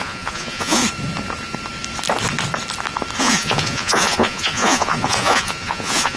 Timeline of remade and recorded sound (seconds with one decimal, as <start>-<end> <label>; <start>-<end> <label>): 0.0-0.8 remade; 0.8-3.2 recorded; 3.2-6.2 remade